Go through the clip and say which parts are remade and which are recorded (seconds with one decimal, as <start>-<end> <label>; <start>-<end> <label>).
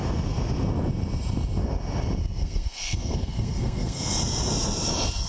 0.0-2.2 recorded; 2.2-4.1 remade; 4.1-5.3 recorded